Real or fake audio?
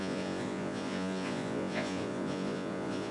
fake